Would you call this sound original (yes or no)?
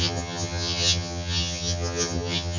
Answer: no